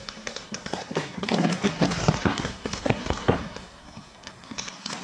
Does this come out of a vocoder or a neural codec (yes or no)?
yes